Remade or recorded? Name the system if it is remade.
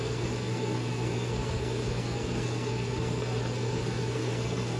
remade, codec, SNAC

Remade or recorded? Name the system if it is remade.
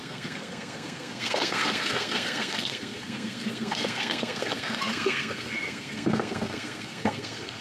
remade, codec, SNAC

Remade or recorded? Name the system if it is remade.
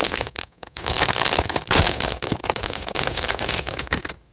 remade, codec, SNAC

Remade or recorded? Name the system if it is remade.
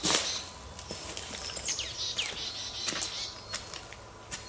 recorded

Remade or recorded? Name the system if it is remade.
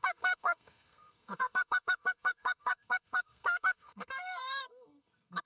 remade, codec, SNAC